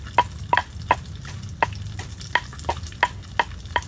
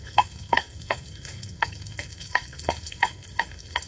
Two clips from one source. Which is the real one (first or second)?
first